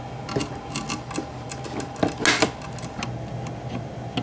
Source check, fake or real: real